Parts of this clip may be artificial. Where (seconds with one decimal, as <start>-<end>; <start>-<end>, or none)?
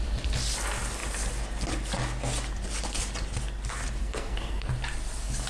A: 4.0-4.7